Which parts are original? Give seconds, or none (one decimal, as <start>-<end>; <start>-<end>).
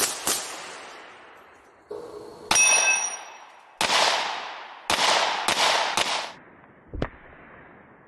0.0-8.1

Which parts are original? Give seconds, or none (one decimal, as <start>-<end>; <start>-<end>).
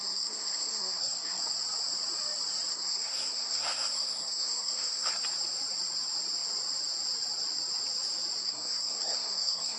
1.4-2.7; 5.1-8.4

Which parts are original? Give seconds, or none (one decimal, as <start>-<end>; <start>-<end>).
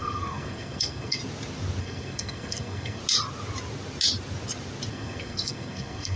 1.2-1.8; 3.0-4.9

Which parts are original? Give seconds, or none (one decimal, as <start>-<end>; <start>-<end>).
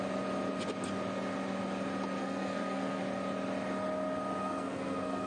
0.0-2.2; 3.0-4.4